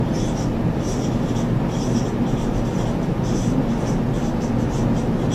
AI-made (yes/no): no